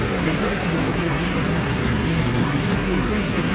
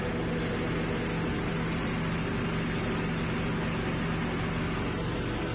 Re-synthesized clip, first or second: first